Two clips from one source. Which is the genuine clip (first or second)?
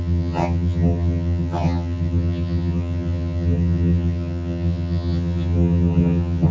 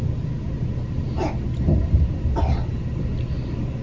second